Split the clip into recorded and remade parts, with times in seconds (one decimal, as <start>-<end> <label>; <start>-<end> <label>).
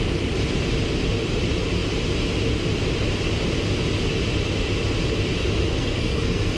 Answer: 0.0-5.4 recorded; 5.4-6.6 remade